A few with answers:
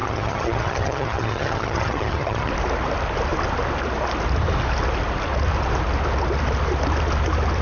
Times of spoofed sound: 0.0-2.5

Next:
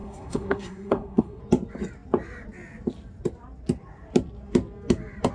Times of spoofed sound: 0.0-1.4

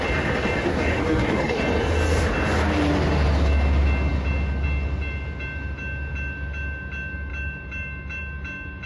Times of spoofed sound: 0.7-1.6

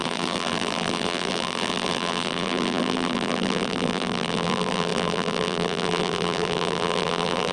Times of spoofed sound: 0.0-7.5